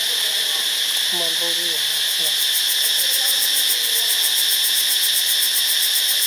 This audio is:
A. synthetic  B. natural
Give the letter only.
B